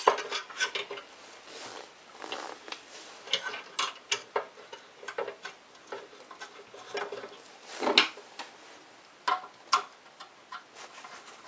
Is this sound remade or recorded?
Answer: recorded